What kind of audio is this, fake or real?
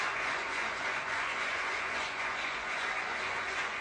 fake